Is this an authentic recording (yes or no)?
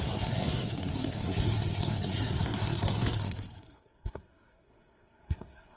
no